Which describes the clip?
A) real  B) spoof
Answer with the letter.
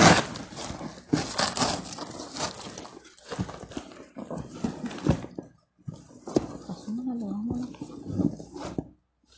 A